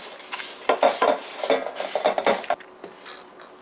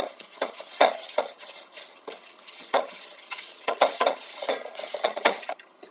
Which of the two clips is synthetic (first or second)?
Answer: second